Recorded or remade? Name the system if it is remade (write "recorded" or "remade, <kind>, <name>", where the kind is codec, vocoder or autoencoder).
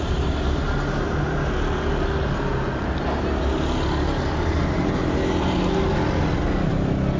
recorded